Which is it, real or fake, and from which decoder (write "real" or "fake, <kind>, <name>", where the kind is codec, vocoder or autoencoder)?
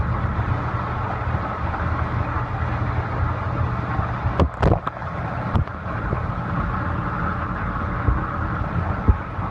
real